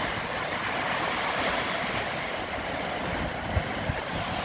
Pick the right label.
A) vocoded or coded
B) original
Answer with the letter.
B